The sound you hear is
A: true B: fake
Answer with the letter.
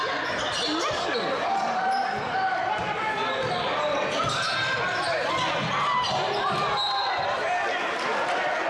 A